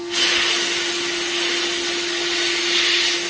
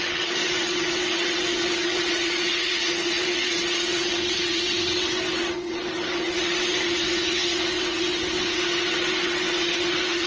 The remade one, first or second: second